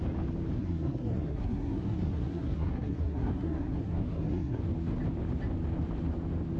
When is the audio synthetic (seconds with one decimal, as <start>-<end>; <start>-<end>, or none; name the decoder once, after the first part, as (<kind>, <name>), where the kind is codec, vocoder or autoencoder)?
0.6-4.6 (codec, SNAC)